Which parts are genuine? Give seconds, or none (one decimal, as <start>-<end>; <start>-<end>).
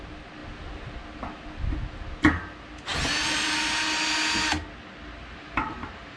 0.0-5.4